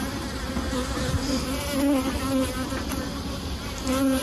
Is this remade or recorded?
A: recorded